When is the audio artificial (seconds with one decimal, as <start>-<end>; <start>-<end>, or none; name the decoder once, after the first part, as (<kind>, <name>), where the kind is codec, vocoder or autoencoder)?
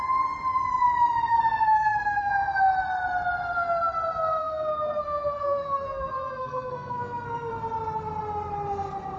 1.3-2.3 (codec, SNAC); 4.4-7.5